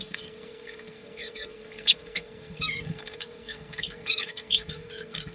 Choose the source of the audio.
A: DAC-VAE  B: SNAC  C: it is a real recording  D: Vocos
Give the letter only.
B